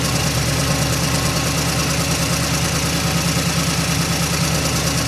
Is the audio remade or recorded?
recorded